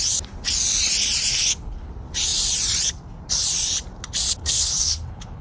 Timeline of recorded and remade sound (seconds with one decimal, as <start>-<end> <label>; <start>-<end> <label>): 0.0-1.3 recorded; 1.3-1.9 remade; 1.9-4.4 recorded; 4.4-5.4 remade